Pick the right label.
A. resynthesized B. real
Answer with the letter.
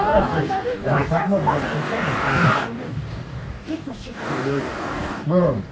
A